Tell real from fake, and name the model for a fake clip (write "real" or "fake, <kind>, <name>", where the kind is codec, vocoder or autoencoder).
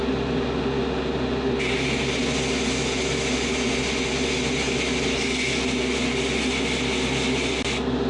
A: real